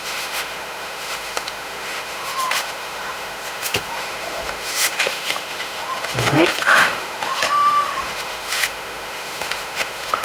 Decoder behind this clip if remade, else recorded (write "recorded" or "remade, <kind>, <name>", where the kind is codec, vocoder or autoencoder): remade, autoencoder, DAC-VAE